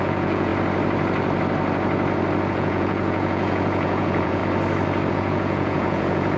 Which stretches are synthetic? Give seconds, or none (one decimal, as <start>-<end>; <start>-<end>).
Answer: 0.0-0.5; 2.5-4.4; 5.1-6.4